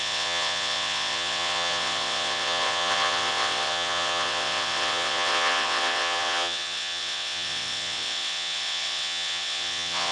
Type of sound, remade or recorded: remade